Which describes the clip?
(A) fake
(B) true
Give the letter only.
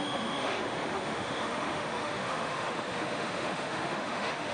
A